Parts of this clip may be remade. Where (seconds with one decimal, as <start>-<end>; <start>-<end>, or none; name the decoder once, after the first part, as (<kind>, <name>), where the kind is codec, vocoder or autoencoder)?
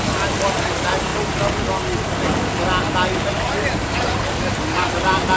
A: none